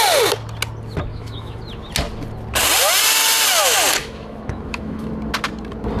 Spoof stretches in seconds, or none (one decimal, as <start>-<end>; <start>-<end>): 1.1-1.6; 4.0-5.1